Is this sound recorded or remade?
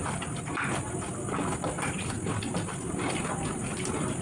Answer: recorded